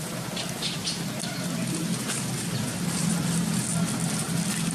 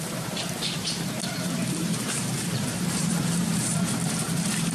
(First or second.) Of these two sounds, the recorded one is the first